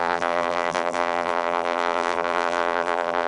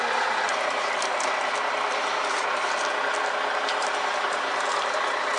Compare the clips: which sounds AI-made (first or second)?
first